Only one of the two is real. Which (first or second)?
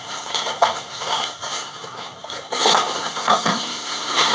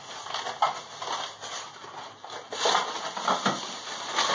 second